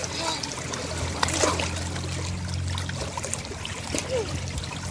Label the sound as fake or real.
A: real